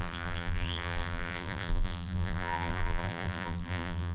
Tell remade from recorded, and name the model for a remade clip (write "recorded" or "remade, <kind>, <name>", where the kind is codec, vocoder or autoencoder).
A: remade, vocoder, BigVGAN v2